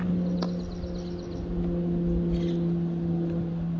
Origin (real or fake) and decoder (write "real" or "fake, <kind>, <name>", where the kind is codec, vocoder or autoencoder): real